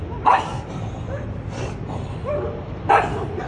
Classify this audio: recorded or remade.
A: recorded